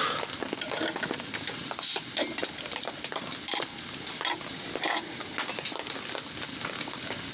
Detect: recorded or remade recorded